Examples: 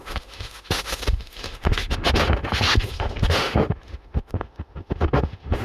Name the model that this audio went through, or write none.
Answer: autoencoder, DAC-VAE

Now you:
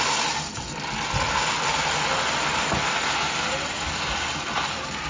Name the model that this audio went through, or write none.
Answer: none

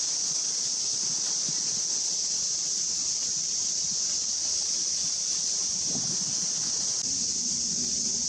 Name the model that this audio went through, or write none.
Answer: none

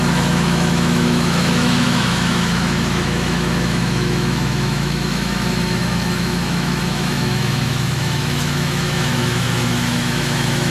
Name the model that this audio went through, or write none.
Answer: autoencoder, DAC-VAE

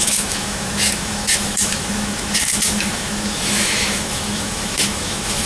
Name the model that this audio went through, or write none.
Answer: autoencoder, DAC-VAE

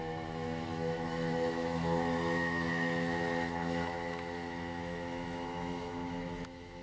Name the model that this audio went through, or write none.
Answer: autoencoder, DAC-VAE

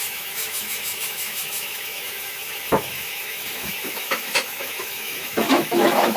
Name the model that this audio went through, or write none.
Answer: autoencoder, DAC-VAE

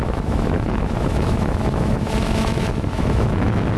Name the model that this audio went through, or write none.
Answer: autoencoder, DAC-VAE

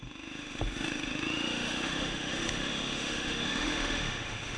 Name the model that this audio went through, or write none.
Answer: autoencoder, DAC-VAE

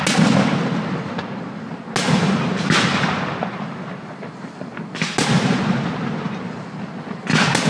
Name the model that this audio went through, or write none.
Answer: none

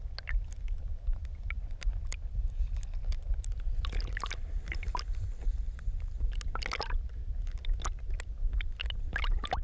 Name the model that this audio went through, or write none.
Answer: none